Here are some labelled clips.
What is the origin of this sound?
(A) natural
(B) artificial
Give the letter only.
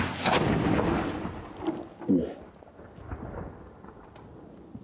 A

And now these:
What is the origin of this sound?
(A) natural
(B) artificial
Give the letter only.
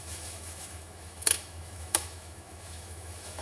B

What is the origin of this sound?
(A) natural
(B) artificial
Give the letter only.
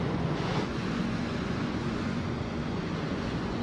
B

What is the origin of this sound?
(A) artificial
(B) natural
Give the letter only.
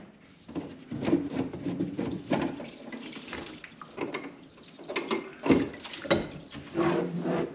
B